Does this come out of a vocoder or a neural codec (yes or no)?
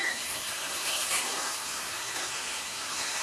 yes